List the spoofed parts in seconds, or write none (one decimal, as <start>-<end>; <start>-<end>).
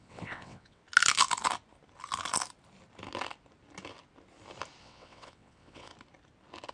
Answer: 0.0-0.8; 4.8-5.9